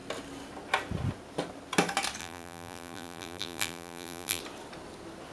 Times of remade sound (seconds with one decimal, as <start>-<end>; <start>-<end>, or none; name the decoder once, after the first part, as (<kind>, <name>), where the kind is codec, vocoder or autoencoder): 2.2-4.4 (vocoder, BigVGAN v2)